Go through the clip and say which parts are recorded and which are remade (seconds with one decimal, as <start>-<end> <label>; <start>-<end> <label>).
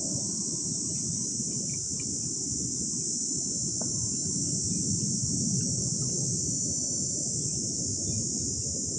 0.0-9.0 recorded